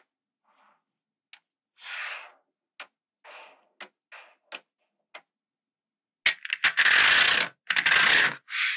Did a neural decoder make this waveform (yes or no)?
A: no